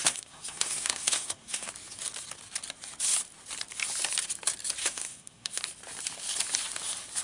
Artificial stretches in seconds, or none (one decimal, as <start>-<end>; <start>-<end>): 0.0-1.7; 4.8-5.6

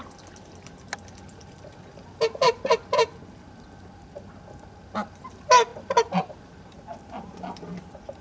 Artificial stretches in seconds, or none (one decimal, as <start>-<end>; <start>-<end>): none

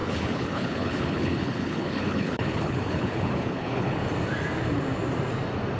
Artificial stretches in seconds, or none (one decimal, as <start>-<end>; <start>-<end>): 0.0-4.0